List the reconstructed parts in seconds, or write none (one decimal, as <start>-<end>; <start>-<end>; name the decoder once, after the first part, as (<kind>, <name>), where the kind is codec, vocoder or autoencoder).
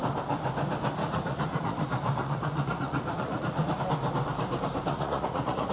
1.0-3.8 (vocoder, Vocos); 4.9-5.7